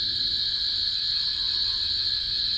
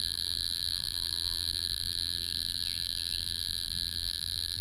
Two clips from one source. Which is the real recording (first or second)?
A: first